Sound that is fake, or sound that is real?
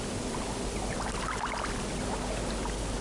real